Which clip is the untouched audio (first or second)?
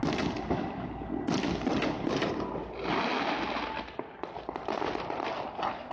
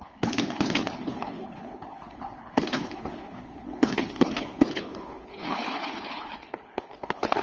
first